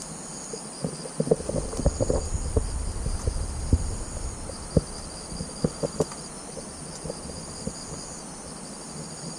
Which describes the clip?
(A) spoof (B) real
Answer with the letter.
B